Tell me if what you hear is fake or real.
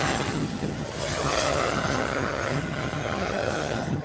fake